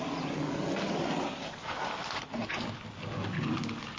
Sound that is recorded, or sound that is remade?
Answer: recorded